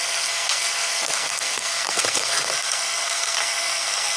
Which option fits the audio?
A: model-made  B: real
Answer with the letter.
A